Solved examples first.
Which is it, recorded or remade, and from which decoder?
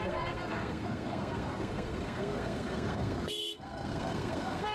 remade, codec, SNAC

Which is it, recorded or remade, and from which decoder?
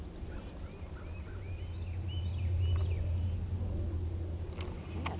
recorded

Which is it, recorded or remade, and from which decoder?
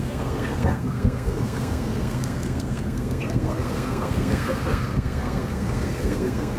remade, codec, SNAC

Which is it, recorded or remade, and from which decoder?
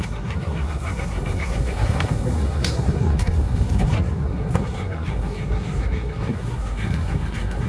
remade, codec, SNAC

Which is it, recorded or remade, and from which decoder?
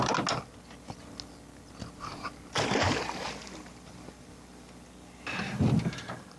recorded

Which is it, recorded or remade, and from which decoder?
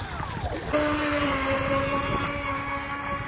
recorded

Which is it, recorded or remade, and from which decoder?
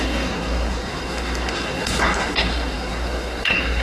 remade, codec, SNAC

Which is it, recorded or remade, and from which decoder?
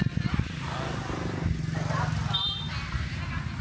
recorded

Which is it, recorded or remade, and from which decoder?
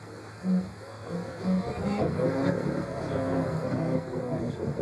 remade, codec, SNAC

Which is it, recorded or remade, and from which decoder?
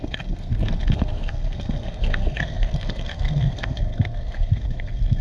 remade, codec, SNAC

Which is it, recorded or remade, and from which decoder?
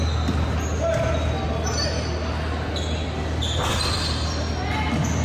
recorded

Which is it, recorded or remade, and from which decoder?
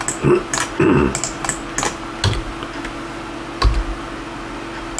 recorded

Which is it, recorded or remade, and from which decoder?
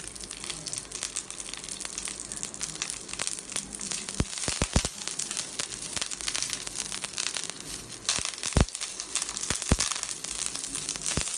recorded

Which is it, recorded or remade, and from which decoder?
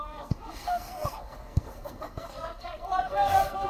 remade, codec, SNAC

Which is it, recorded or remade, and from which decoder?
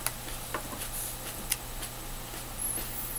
recorded